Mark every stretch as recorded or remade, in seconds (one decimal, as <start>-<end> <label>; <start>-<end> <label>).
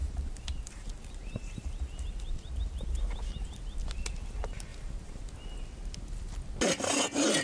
0.0-2.6 remade; 2.6-4.7 recorded; 4.7-5.2 remade; 5.2-7.4 recorded